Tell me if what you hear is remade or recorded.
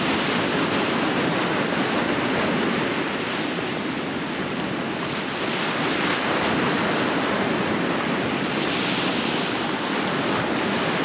recorded